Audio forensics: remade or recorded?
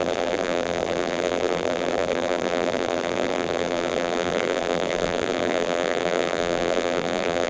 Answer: remade